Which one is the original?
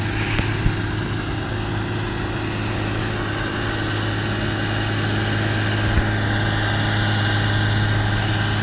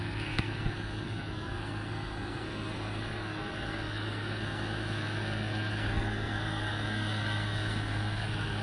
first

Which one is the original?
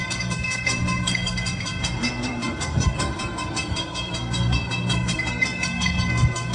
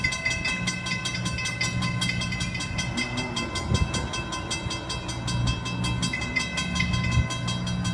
second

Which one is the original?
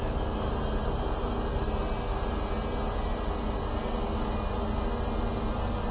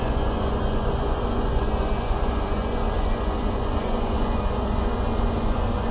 first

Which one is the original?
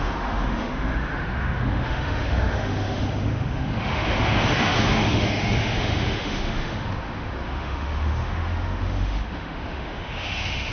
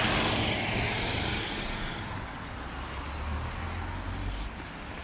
second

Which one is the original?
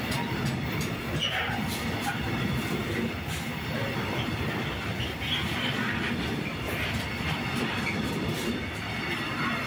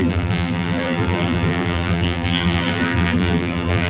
first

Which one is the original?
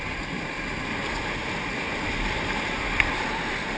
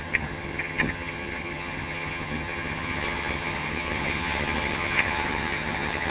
first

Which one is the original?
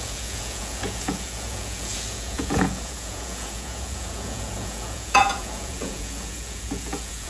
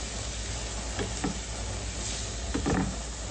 second